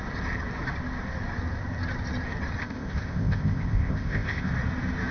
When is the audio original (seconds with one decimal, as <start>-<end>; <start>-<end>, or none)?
0.0-2.6; 4.5-5.1